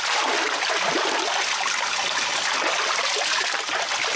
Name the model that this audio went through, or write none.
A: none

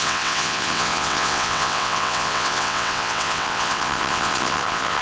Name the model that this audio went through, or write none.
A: vocoder, WaveNeXt